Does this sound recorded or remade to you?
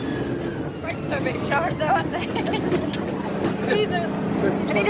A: recorded